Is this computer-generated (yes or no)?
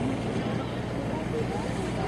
no